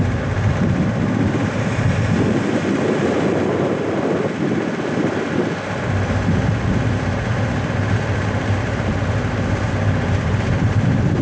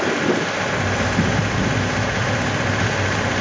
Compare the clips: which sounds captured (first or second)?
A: second